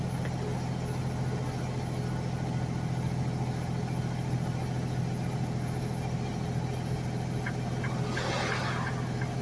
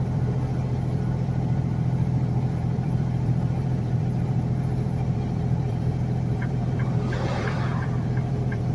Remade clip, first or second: second